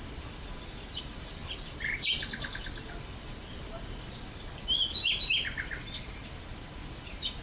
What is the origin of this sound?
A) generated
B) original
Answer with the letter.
B